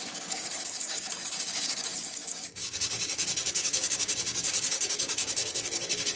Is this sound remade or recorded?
remade